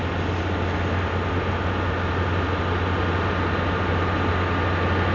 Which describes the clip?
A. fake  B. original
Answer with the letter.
B